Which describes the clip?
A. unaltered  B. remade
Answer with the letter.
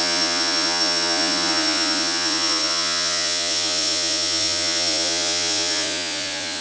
B